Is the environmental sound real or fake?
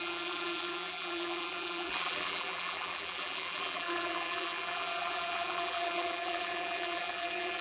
fake